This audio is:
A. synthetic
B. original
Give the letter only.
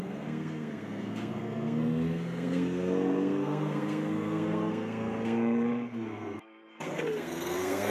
A